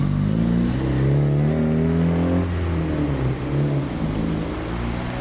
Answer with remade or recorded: recorded